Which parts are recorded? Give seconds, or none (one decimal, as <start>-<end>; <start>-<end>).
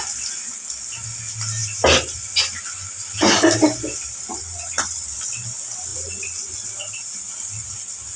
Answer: 0.0-8.2